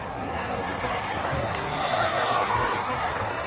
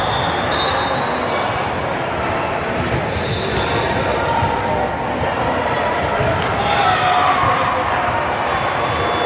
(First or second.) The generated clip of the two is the first